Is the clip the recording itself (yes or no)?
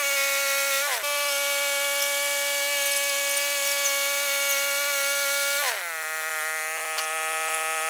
yes